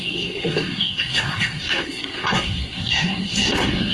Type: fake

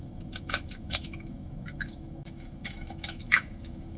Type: fake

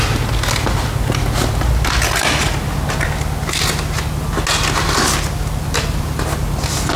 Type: real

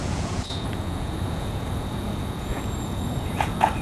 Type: fake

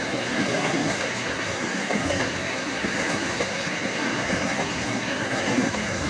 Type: fake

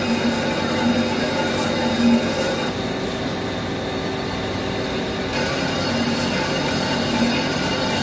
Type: real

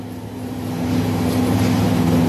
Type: real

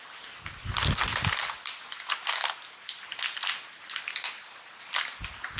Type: real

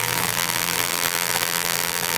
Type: fake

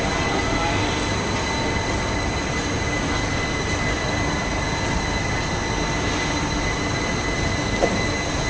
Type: real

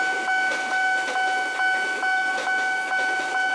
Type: real